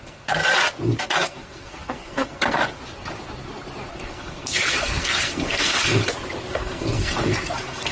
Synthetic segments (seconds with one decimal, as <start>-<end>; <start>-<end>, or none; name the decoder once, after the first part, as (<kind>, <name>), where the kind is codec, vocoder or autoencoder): 0.0-0.4 (codec, SNAC); 1.0-2.6; 4.0-6.0; 6.5-7.9